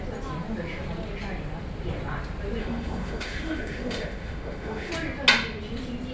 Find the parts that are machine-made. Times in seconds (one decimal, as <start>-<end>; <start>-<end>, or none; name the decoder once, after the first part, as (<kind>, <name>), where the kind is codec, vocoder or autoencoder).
2.6-4.9 (autoencoder, DAC-VAE)